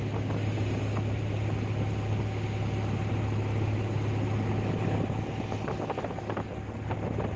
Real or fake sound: real